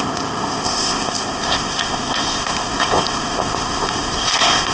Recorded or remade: remade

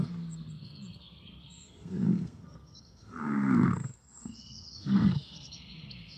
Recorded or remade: remade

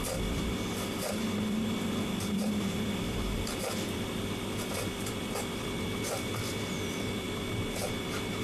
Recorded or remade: remade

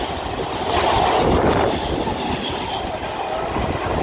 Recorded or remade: recorded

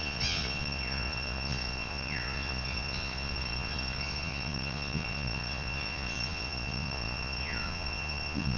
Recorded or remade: remade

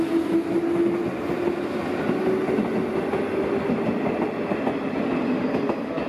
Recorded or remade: recorded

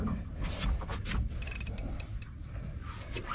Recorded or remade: recorded